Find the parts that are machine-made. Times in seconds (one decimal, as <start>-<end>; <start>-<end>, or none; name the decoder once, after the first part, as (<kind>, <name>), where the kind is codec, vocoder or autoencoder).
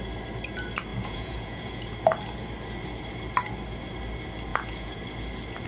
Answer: 0.9-1.8 (vocoder, Vocos); 4.5-5.0